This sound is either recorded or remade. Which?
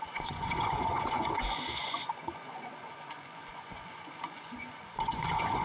remade